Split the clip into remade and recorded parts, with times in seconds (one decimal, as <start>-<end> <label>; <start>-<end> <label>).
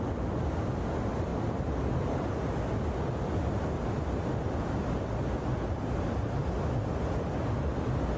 0.0-8.2 recorded